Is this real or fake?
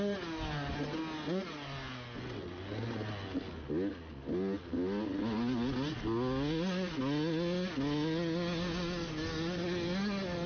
real